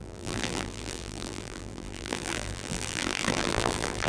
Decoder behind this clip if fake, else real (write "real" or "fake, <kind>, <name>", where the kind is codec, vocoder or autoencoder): fake, vocoder, BigVGAN v2